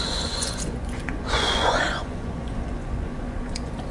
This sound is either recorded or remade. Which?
remade